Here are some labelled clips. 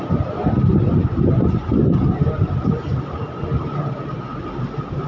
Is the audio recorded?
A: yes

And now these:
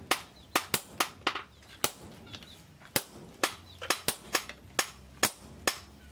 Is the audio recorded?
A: yes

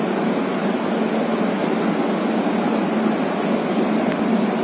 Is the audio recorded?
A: yes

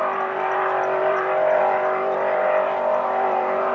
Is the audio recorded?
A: no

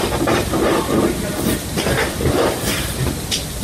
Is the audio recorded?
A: no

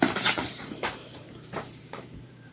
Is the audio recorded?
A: no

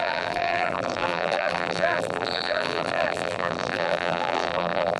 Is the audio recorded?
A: no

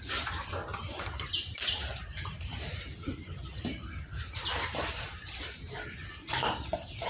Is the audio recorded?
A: no